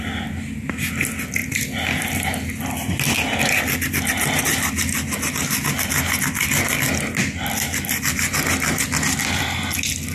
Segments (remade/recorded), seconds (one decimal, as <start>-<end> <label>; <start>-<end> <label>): 0.0-10.1 recorded